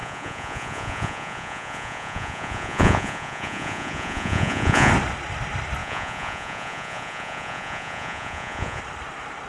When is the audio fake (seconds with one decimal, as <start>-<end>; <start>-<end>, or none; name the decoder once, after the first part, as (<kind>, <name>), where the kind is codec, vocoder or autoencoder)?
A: 0.0-4.9 (vocoder, Vocos); 5.8-8.8